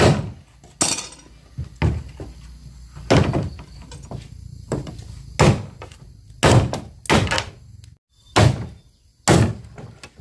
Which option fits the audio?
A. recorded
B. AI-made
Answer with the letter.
A